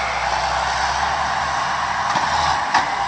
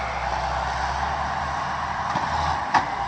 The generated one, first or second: second